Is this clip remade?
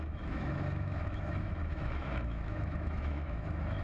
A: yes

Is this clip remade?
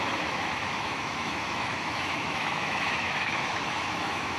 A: yes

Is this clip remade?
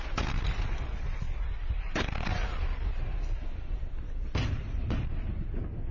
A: no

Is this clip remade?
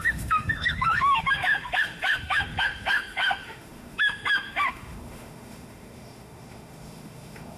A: yes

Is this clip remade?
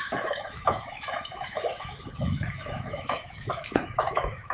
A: yes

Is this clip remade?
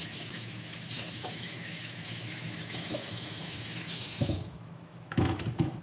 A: yes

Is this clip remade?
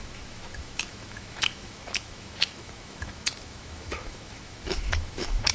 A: yes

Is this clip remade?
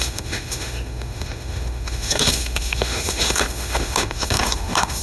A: yes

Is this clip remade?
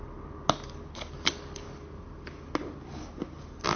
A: no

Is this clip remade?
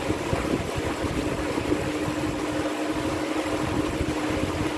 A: no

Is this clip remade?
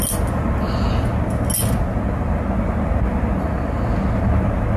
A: no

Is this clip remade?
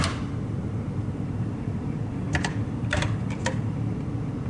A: no